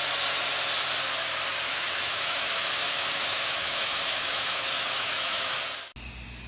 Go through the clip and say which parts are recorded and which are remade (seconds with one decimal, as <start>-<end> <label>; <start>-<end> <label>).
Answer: 0.0-1.7 recorded; 1.7-5.6 remade; 5.6-6.5 recorded